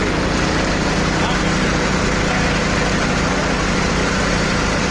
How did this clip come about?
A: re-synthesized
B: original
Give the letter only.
B